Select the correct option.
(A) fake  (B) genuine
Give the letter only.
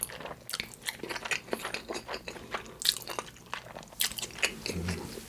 B